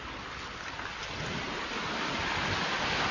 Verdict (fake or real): real